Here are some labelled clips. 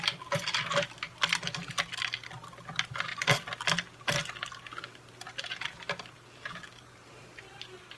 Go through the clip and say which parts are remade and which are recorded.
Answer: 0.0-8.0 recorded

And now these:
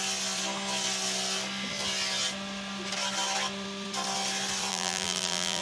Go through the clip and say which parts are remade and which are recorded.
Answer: 0.0-4.7 recorded; 4.7-5.6 remade